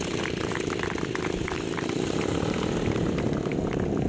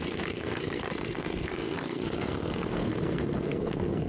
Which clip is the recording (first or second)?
first